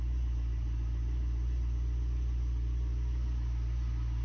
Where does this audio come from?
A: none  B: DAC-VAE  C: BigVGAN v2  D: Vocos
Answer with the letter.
A